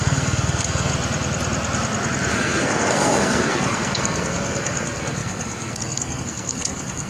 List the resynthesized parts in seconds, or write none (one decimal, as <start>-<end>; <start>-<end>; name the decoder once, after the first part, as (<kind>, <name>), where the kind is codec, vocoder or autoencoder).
0.0-0.9 (codec, SNAC); 2.3-7.1